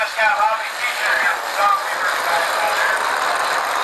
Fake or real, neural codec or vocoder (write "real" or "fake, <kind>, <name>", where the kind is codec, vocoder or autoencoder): real